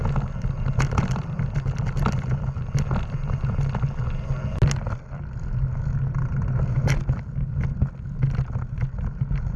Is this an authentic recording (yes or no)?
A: yes